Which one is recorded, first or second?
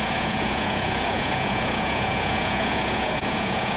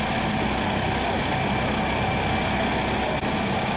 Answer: second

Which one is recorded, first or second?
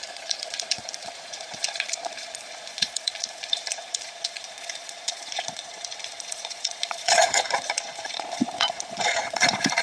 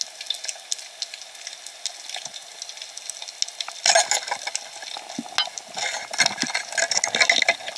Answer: second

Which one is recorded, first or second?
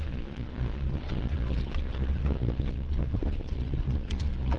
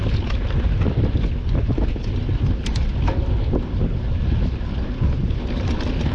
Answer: second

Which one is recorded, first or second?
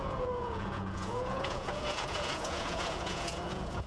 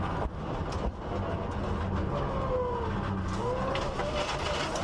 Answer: second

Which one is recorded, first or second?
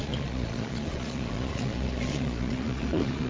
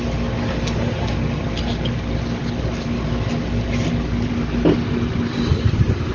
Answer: second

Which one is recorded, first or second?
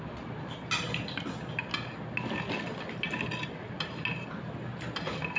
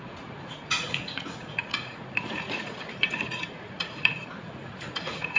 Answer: first